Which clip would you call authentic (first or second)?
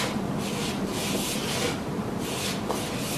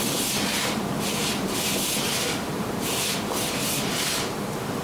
first